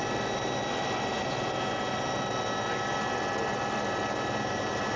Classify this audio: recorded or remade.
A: recorded